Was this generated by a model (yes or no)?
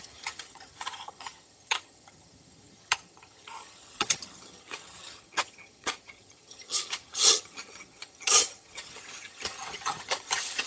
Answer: yes